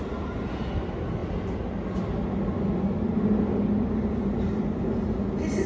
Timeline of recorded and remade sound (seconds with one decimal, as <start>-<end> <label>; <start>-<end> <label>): 0.0-5.7 recorded